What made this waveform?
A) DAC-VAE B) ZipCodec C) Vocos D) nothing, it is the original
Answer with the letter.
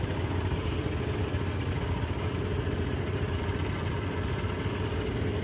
D